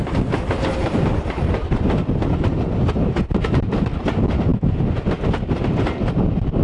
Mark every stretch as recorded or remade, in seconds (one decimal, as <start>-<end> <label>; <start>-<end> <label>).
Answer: 0.0-6.6 recorded